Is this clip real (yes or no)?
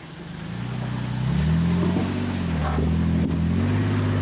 yes